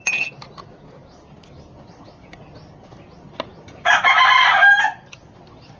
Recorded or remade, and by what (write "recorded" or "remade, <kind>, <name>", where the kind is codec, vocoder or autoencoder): recorded